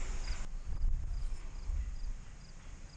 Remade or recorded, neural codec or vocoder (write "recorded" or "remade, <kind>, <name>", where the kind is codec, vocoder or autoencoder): recorded